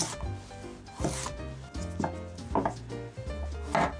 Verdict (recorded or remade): recorded